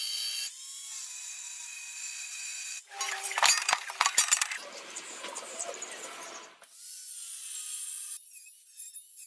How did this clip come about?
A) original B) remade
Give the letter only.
A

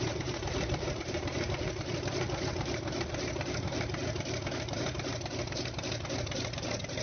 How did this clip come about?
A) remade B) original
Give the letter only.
A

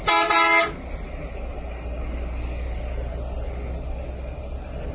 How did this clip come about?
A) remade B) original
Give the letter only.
B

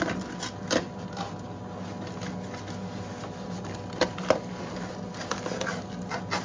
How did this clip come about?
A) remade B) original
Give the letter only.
B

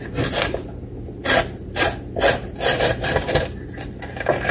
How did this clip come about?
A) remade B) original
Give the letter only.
B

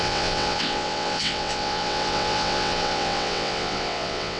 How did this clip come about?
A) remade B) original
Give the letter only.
A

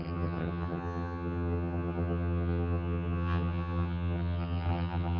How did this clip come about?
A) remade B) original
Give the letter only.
A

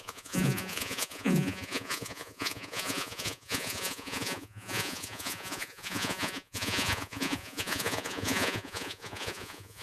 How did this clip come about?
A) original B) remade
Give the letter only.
B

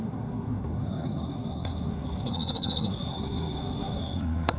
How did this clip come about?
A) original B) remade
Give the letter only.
B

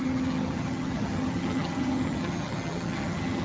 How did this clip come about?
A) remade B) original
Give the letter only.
A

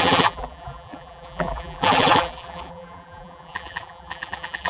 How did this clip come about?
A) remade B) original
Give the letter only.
A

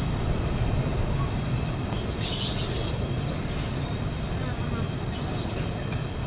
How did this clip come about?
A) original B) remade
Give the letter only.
A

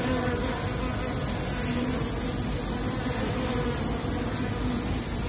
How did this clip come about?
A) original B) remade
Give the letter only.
A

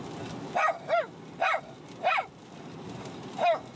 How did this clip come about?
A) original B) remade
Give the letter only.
A